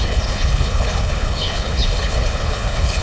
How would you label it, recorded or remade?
remade